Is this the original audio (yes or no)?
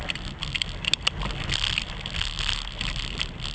yes